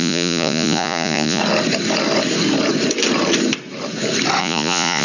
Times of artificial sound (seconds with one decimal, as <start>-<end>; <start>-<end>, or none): 0.0-1.4; 4.4-5.0